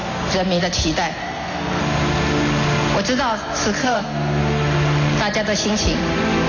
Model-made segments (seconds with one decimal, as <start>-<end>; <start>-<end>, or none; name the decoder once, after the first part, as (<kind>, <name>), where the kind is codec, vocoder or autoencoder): 1.2-1.8 (codec, SNAC); 3.8-4.4